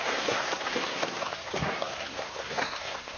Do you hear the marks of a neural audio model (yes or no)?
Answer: yes